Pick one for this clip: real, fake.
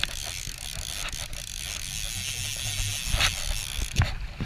real